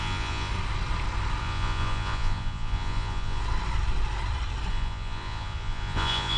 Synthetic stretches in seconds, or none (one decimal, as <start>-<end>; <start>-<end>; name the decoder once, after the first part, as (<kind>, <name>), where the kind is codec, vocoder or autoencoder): 0.0-0.5 (vocoder, Vocos); 1.4-3.4; 4.7-6.4